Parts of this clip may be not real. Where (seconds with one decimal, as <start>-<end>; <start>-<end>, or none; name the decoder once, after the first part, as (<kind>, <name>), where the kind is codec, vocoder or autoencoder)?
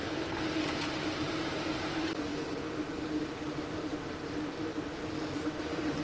0.0-2.3 (vocoder, BigVGAN v2); 3.0-6.0